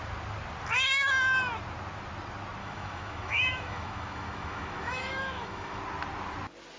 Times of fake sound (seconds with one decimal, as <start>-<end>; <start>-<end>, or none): 2.6-5.8